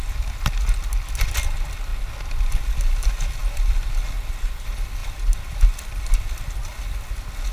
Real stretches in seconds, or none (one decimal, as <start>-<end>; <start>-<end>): 0.0-7.5

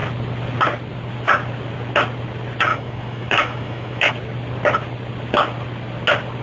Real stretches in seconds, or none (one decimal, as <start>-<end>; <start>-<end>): 0.0-2.7; 4.1-6.4